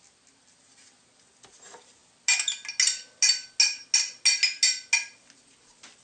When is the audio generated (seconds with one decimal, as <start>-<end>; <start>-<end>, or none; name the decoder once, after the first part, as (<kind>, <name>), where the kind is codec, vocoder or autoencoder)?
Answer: none